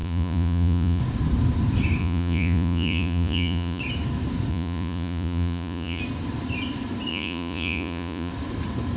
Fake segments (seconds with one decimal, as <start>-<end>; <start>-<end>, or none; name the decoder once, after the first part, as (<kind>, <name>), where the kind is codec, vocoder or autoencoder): 0.0-1.0 (vocoder, Vocos); 2.0-3.8; 4.5-6.0; 7.1-8.3